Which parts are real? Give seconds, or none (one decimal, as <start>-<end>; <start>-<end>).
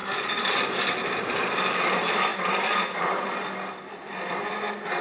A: 0.0-5.0